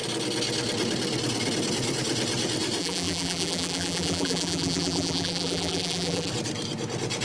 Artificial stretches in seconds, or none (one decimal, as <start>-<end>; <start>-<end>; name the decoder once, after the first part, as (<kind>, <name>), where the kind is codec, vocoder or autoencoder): 2.8-6.3 (vocoder, BigVGAN v2)